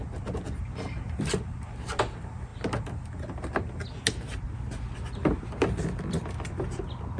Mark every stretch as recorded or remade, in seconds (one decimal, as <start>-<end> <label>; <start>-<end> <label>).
0.0-7.2 recorded